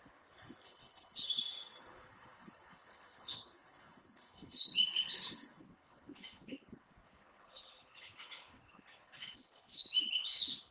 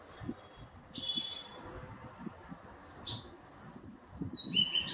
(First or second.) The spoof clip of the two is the first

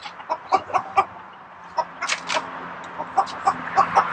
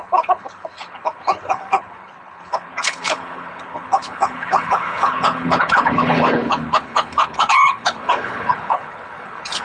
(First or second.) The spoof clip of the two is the second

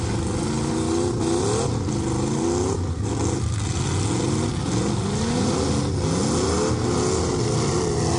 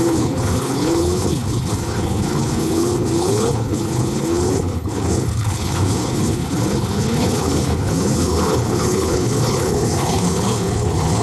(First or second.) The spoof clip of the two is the second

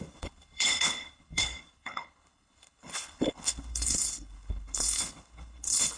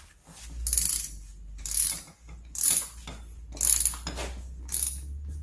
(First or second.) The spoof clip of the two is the first